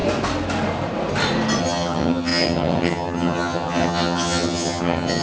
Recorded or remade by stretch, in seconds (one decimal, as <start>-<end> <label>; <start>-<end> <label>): 0.0-1.6 recorded; 1.6-5.2 remade